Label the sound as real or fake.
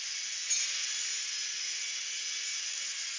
real